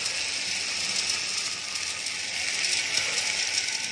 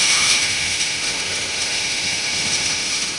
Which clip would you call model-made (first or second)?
second